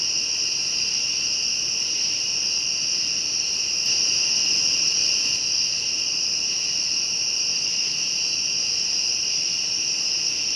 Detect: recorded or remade recorded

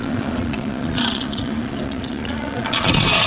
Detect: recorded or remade remade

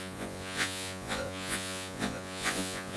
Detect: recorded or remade remade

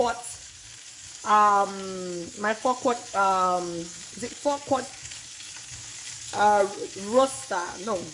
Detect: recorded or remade remade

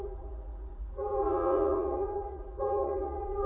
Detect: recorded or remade remade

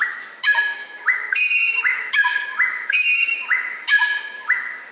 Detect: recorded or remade remade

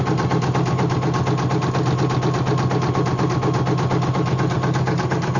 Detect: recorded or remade recorded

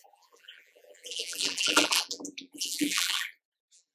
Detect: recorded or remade remade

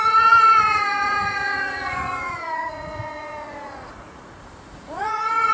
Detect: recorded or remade remade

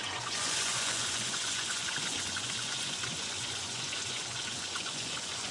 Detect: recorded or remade remade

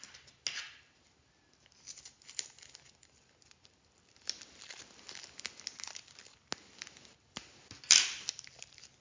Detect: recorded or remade recorded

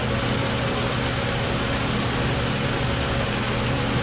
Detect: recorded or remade recorded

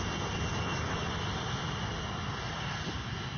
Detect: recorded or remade recorded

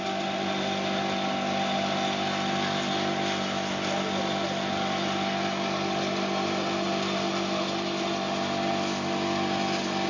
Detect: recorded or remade recorded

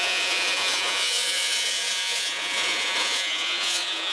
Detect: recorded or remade remade